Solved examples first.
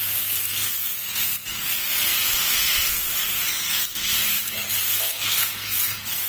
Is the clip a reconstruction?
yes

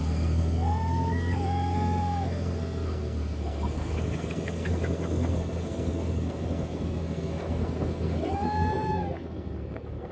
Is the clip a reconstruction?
yes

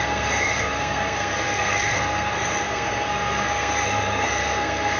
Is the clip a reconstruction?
yes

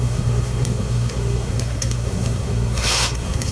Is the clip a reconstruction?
yes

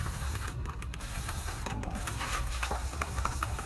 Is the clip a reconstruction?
yes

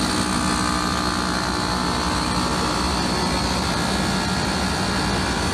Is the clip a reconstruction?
no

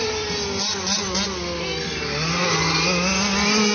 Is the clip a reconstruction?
no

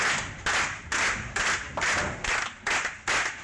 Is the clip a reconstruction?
no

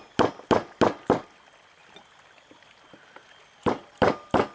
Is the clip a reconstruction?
no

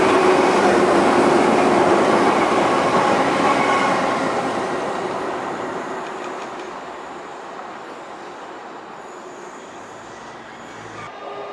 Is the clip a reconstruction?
no